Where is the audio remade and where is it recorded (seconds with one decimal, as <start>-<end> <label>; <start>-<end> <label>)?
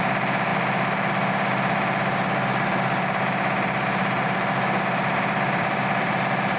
0.0-5.0 recorded; 5.0-6.1 remade; 6.1-6.6 recorded